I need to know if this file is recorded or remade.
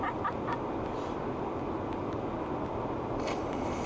recorded